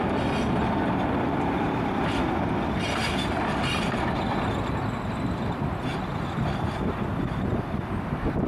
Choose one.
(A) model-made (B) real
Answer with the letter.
A